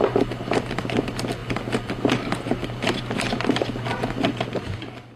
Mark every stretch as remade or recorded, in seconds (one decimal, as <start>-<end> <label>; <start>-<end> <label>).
0.0-5.2 recorded